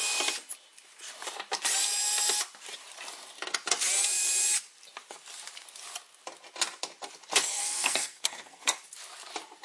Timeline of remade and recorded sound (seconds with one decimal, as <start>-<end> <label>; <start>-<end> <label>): 0.0-7.4 recorded; 7.4-8.8 remade; 8.8-9.6 recorded